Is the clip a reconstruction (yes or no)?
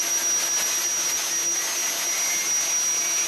no